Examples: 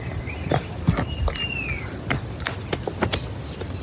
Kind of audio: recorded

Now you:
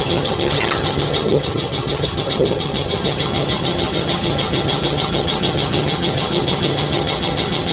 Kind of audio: remade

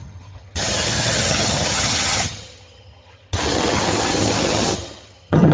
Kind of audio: remade